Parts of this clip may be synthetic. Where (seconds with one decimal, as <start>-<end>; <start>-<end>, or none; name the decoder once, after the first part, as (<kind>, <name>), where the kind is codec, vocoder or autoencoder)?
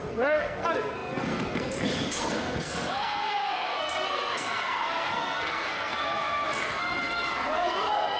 0.0-8.2 (codec, SNAC)